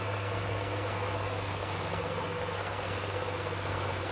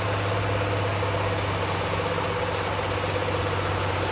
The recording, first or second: second